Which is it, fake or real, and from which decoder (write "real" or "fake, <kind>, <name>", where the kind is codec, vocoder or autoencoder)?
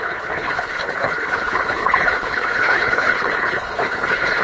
fake, codec, HILCodec